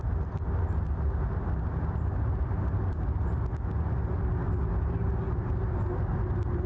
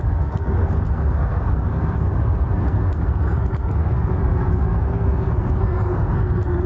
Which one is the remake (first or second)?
second